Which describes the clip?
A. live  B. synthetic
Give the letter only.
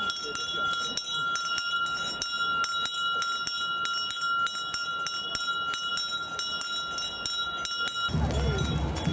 A